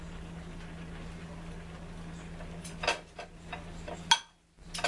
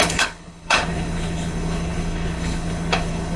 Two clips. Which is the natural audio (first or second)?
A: first